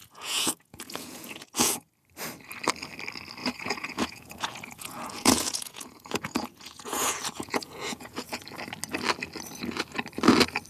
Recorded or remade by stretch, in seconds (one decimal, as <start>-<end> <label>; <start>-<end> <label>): 0.0-1.9 remade; 1.9-3.4 recorded; 3.4-8.4 remade; 8.4-10.7 recorded